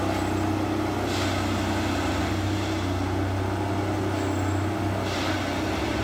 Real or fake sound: real